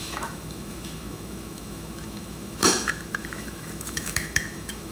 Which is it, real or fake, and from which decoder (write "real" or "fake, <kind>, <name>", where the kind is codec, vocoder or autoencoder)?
fake, autoencoder, DAC-VAE